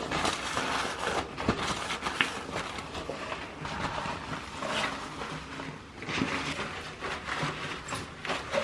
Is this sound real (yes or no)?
yes